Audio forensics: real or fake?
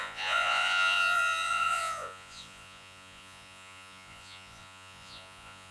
fake